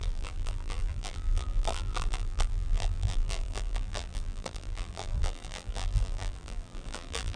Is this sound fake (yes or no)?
yes